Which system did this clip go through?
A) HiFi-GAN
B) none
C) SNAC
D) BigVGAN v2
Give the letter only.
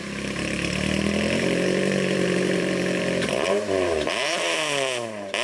D